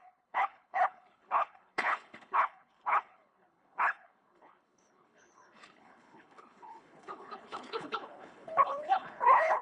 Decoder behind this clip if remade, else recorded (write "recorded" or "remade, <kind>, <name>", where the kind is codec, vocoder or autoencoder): remade, codec, HILCodec